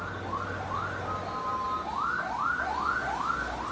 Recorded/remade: recorded